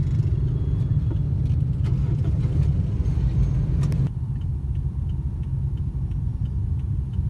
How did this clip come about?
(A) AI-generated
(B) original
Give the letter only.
B